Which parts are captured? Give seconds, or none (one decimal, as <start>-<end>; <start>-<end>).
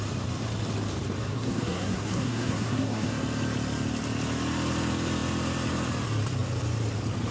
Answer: 0.0-1.2; 3.1-7.3